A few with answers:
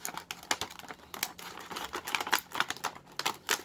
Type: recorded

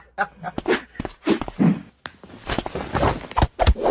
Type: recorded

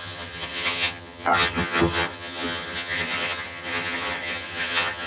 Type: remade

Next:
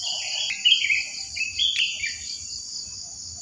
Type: remade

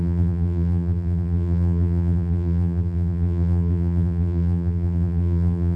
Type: remade